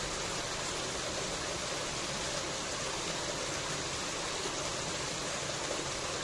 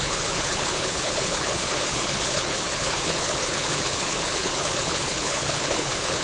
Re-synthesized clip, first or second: second